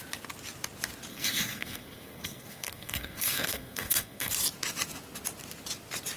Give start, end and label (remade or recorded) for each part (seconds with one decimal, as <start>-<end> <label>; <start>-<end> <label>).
0.0-1.1 recorded; 1.1-4.3 remade; 4.3-6.2 recorded